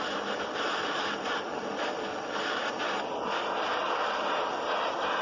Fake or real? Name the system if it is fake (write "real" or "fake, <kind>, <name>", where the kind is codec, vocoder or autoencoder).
real